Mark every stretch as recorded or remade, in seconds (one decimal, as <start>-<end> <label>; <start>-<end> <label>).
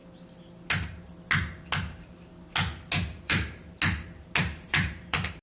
0.0-3.2 recorded; 3.2-3.6 remade; 3.6-4.4 recorded; 4.4-5.4 remade